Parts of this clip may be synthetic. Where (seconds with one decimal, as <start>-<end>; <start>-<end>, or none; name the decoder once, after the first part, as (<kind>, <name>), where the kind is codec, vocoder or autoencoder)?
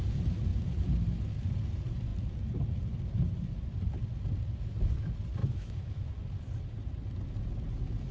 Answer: 5.4-6.1 (autoencoder, DAC-VAE)